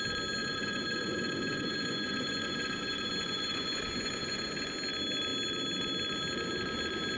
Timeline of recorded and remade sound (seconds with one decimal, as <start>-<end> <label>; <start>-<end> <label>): 0.0-0.4 recorded; 0.4-4.7 remade; 4.7-7.2 recorded